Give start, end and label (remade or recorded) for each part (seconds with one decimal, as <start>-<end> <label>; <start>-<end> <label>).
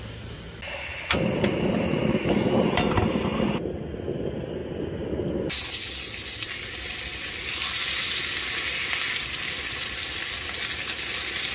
0.0-11.5 recorded